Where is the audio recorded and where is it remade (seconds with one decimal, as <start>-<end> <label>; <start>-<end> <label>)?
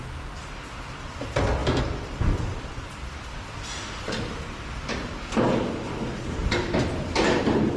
0.0-1.6 recorded; 1.6-5.3 remade; 5.3-6.4 recorded; 6.4-7.8 remade